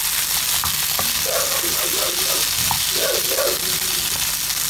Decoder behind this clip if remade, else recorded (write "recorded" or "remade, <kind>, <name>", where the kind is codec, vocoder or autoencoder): recorded